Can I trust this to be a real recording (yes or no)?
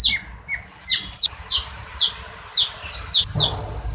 yes